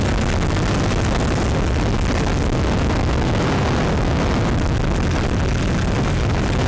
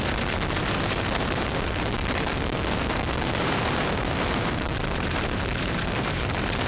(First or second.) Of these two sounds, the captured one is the first